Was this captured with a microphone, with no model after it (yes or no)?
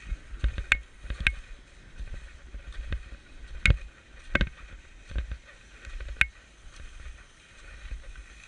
yes